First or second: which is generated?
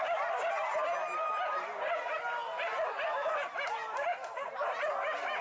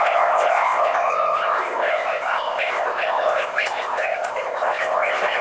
second